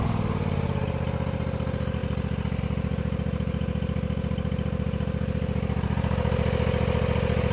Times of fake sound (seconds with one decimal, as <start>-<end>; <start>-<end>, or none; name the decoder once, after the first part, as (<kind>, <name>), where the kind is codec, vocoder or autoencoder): none